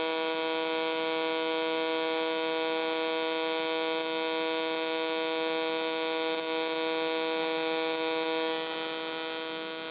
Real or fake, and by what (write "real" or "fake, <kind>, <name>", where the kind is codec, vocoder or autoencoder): real